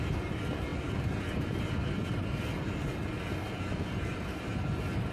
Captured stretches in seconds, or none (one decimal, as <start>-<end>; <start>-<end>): 0.0-5.1